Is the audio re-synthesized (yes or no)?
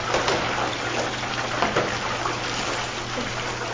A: no